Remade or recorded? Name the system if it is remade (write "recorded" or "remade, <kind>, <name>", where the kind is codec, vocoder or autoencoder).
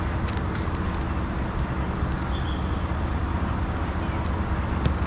recorded